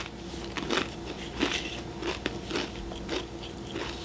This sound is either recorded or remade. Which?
recorded